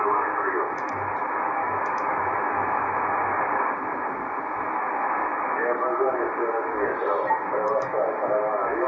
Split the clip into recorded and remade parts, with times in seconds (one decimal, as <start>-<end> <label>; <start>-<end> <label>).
0.0-1.6 recorded; 1.6-3.0 remade; 3.0-8.9 recorded